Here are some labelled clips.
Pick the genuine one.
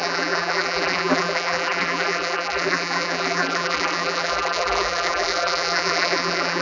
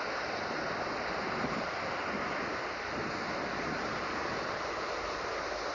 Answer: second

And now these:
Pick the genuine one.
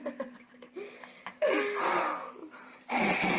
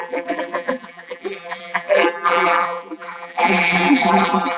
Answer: first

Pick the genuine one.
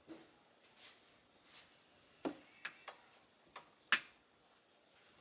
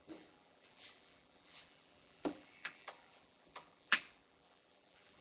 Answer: first